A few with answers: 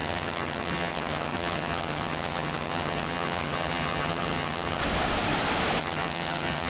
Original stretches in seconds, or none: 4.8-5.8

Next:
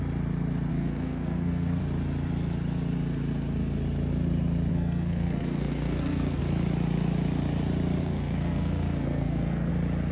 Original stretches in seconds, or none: 0.0-0.7; 1.8-4.7; 6.4-8.0; 9.7-10.1